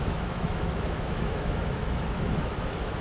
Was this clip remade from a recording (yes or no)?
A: yes